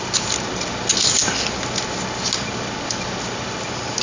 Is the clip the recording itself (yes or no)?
yes